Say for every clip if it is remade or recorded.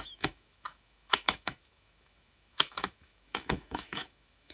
remade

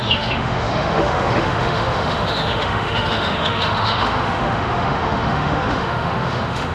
remade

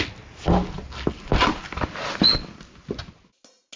recorded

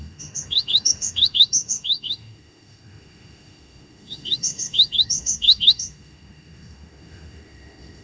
remade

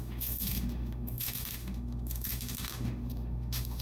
remade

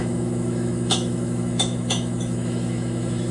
remade